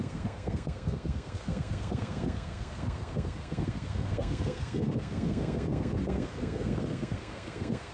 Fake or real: fake